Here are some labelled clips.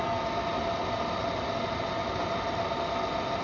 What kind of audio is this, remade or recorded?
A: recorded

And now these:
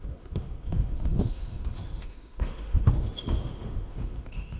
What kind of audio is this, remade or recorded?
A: remade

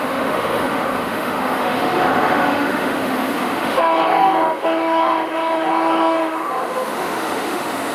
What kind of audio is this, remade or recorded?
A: remade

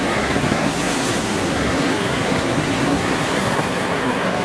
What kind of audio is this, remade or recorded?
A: remade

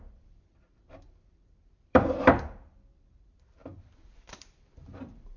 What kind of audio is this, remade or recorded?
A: remade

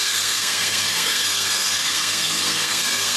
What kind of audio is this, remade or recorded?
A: remade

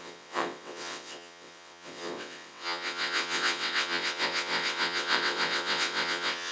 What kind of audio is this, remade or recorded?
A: remade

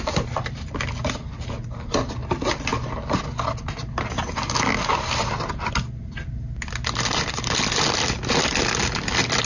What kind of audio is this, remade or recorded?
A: recorded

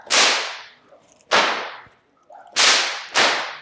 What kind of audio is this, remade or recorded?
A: recorded